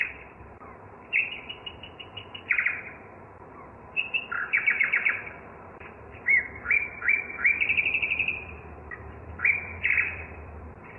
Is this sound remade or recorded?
remade